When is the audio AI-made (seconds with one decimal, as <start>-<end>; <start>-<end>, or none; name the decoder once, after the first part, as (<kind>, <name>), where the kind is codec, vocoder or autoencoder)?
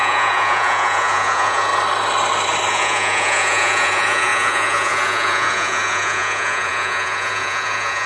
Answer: 0.0-1.7 (vocoder, Vocos); 2.7-8.1